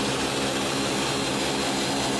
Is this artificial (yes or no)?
no